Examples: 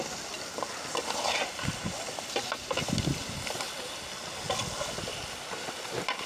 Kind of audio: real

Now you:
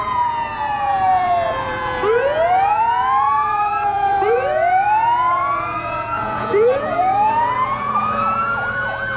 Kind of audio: fake